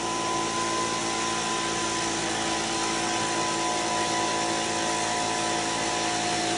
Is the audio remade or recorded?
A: recorded